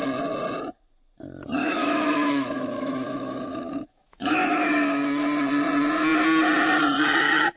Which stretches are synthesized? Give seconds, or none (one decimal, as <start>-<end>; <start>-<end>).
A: 1.6-4.7